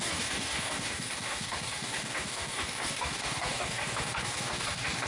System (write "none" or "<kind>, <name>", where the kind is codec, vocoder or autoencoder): codec, DAC